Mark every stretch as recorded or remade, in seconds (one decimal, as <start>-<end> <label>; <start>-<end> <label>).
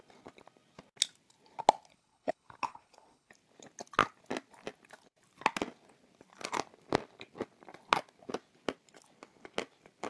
0.0-1.9 recorded; 1.9-3.3 remade; 3.3-10.1 recorded